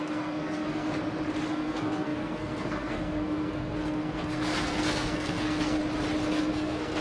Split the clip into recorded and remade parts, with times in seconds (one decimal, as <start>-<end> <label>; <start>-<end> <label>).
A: 0.0-0.9 remade; 0.9-1.5 recorded; 1.5-5.8 remade; 5.8-6.3 recorded; 6.3-7.0 remade